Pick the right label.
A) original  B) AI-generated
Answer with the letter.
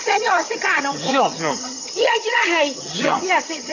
B